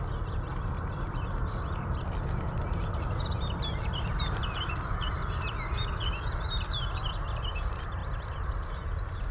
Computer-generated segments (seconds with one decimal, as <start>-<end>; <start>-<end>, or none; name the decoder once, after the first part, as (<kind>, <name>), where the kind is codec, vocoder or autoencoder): none